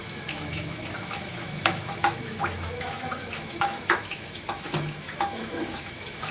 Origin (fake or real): fake